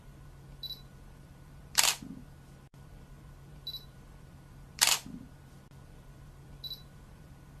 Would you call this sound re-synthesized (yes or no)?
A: yes